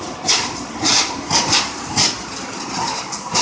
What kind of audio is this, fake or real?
fake